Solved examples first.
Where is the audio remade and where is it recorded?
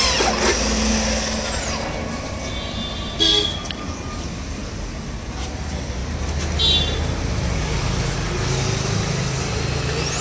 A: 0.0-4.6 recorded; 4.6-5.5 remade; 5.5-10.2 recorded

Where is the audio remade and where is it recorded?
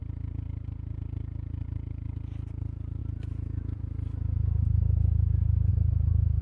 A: 0.0-3.0 remade; 3.0-5.7 recorded; 5.7-6.4 remade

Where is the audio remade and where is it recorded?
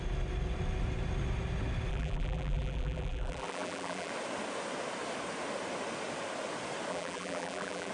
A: 0.0-1.9 recorded; 1.9-4.1 remade; 4.1-6.9 recorded; 6.9-7.9 remade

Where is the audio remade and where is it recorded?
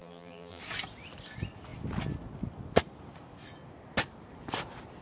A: 0.0-0.6 remade; 0.6-5.0 recorded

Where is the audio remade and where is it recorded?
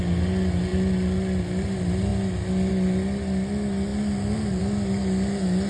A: 0.0-5.7 recorded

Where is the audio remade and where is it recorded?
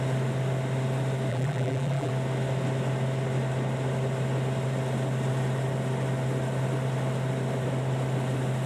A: 0.0-1.3 recorded; 1.3-2.1 remade; 2.1-8.7 recorded